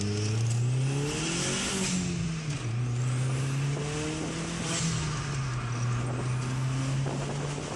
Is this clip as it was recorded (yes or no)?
yes